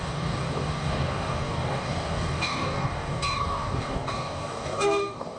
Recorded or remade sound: remade